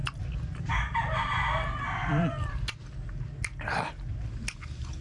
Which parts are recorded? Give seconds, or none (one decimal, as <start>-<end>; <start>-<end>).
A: 0.0-2.0; 2.5-5.0